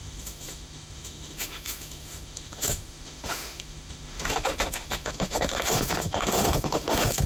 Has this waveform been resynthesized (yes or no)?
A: yes